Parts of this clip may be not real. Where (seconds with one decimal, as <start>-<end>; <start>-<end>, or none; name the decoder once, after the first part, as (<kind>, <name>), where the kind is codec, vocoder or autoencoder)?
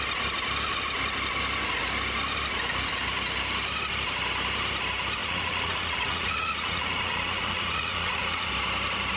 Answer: 5.2-8.5 (vocoder, Vocos)